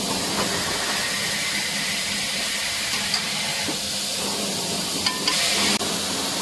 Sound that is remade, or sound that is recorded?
recorded